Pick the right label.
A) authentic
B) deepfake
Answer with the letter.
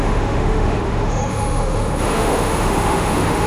B